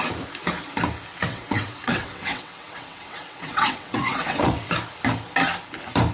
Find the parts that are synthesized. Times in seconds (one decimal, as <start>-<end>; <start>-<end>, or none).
1.1-4.7